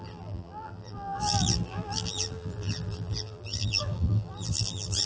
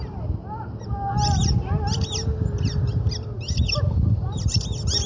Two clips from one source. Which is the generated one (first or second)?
first